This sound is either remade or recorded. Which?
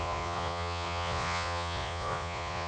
remade